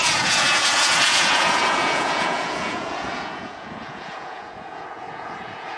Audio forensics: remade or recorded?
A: remade